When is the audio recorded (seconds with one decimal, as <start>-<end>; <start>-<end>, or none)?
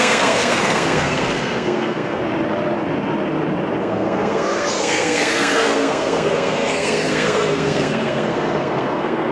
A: 2.2-3.8